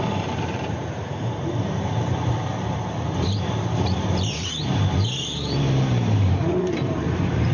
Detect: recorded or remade remade